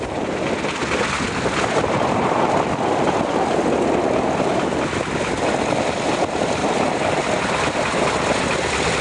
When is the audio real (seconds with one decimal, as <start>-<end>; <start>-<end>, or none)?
0.0-0.8; 2.4-6.6; 7.4-9.0